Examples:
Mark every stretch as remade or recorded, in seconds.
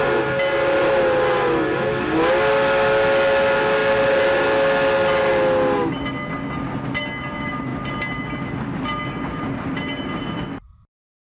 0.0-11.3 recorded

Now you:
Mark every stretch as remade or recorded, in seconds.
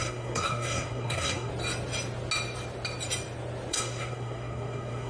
0.0-1.5 remade; 1.5-3.7 recorded; 3.7-5.1 remade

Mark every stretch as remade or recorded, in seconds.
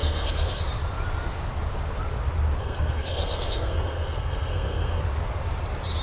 0.0-0.6 remade; 0.6-2.6 recorded; 2.6-5.0 remade; 5.0-6.0 recorded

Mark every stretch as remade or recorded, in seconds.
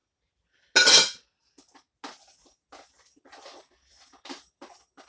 0.0-5.1 recorded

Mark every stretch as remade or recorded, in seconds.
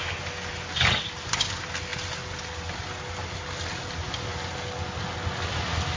0.0-6.0 recorded